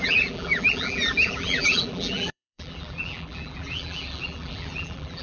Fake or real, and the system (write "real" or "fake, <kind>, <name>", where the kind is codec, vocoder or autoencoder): fake, vocoder, BigVGAN v2